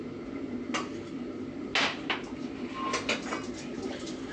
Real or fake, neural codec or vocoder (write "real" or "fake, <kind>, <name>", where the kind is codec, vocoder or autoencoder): real